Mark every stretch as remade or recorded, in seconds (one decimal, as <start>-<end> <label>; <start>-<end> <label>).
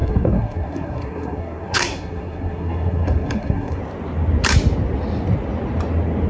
0.0-3.8 remade; 3.8-6.3 recorded